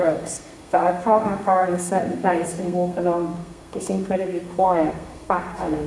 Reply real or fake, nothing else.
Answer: fake